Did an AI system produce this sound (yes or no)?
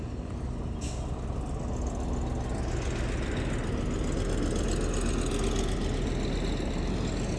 no